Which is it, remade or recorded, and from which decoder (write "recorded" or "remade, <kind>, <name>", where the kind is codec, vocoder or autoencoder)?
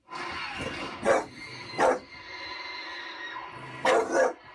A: recorded